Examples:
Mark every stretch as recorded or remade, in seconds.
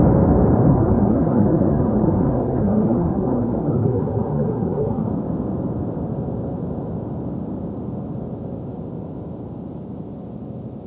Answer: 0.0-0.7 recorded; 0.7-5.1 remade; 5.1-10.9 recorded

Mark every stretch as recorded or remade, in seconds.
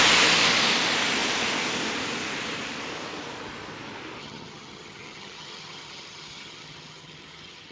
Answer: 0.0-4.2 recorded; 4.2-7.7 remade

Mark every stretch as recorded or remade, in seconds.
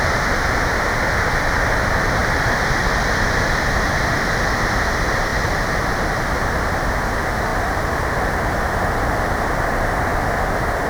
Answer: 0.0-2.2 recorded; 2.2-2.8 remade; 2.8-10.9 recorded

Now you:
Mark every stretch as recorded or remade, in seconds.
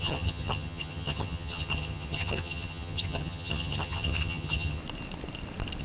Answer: 0.0-4.8 remade; 4.8-5.8 recorded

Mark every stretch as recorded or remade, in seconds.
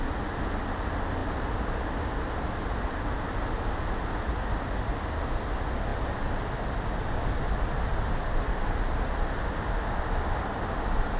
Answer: 0.0-11.2 recorded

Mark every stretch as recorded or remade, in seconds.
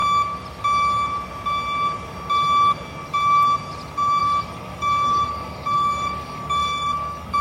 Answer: 0.0-4.2 recorded; 4.2-7.4 remade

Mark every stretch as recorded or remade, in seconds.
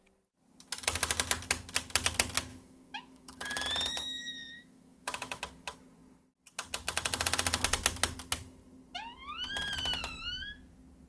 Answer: 0.0-2.5 recorded; 2.5-5.4 remade; 5.4-11.1 recorded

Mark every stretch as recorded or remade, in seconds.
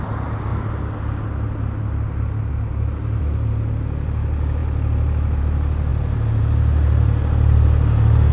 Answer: 0.0-8.3 recorded